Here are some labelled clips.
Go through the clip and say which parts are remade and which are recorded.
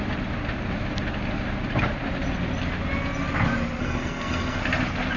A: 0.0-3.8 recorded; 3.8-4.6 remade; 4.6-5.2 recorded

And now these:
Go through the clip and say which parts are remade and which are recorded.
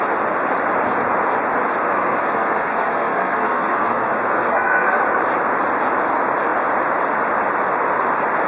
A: 0.0-1.8 recorded; 1.8-5.0 remade; 5.0-8.5 recorded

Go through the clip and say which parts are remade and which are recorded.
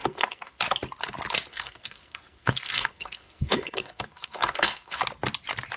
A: 0.0-0.6 remade; 0.6-1.5 recorded; 1.5-5.0 remade; 5.0-5.8 recorded